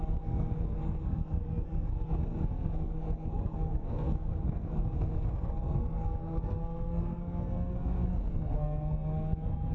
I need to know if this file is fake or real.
fake